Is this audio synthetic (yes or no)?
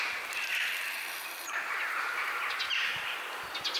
no